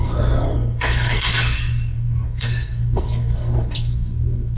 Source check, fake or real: fake